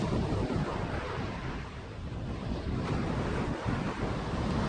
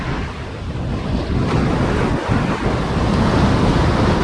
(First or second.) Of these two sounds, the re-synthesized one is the first